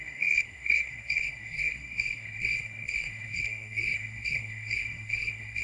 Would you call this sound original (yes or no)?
no